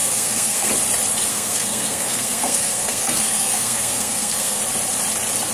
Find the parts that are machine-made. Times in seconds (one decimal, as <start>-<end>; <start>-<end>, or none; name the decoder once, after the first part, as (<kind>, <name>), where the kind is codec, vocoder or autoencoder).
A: 0.0-0.7 (codec, SNAC); 1.3-4.6

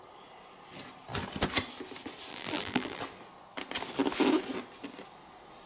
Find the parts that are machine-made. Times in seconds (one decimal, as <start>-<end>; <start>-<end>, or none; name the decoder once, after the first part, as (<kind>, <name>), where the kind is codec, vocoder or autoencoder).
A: 2.3-3.0 (vocoder, BigVGAN v2)

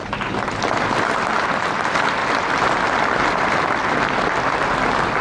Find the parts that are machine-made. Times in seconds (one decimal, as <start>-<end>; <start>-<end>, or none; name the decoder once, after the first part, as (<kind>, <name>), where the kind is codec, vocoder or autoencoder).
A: 0.6-5.2 (vocoder, BigVGAN v2)

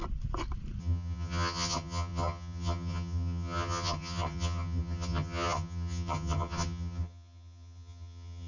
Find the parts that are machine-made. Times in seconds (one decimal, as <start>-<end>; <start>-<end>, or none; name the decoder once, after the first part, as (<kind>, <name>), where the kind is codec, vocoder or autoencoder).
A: 0.8-8.5 (vocoder, HiFi-GAN)

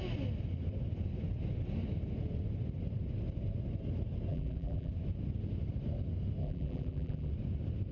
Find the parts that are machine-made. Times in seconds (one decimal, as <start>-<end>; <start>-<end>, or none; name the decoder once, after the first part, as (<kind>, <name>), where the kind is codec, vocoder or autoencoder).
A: 4.3-4.9 (vocoder, BigVGAN v2); 6.4-7.3

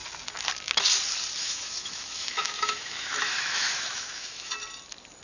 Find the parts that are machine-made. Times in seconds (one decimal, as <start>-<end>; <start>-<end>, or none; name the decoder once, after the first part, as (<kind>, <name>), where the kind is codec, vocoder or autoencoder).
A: 1.4-4.5 (autoencoder, DAC-VAE)